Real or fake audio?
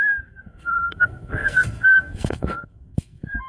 fake